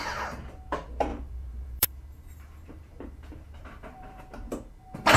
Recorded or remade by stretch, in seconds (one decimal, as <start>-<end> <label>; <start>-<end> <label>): 0.0-1.1 recorded; 1.1-4.2 remade; 4.2-5.2 recorded